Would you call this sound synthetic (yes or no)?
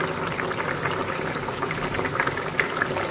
no